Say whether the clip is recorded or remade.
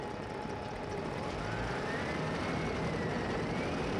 recorded